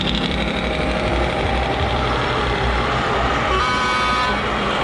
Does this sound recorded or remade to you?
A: remade